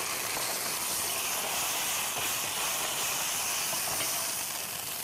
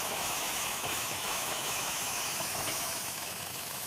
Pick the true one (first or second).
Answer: first